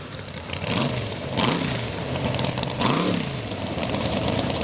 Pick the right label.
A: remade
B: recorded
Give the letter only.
A